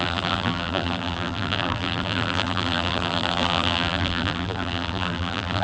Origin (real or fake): fake